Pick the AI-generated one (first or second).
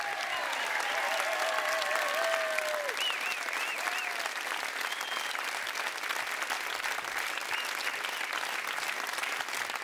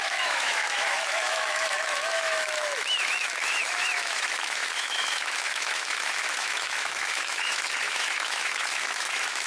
second